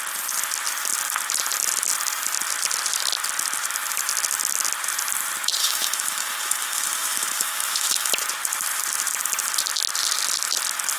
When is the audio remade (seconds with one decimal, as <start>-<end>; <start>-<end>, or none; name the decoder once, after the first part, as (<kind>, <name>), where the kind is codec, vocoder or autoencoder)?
5.6-8.1 (autoencoder, DAC-VAE)